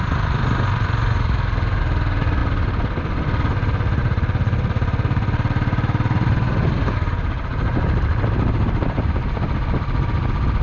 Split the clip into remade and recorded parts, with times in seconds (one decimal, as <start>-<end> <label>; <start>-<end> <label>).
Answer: 0.0-4.0 recorded; 4.0-9.1 remade; 9.1-10.6 recorded